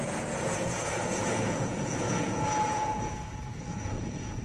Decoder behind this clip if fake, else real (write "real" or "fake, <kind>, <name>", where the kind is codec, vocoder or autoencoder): fake, vocoder, Vocos